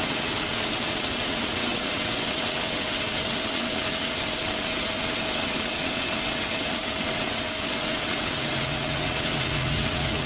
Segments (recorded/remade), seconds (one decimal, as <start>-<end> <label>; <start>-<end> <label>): 0.0-10.3 remade